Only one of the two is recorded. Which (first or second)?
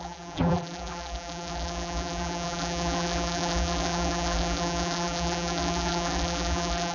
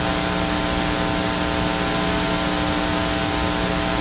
second